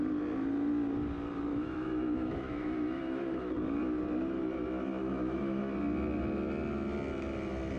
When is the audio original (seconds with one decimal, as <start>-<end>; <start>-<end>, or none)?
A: 0.0-1.5; 3.5-5.0; 5.6-7.8